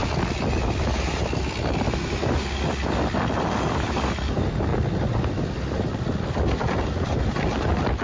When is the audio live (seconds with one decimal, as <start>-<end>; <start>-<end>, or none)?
0.0-8.0